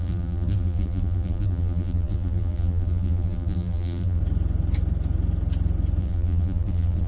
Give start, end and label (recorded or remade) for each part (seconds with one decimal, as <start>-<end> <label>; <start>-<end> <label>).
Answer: 0.0-4.2 remade; 4.2-6.0 recorded; 6.0-7.1 remade